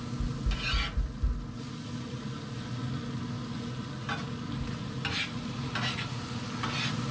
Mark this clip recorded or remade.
recorded